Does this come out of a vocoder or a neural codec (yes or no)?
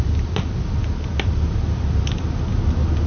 no